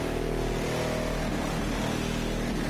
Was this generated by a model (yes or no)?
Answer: no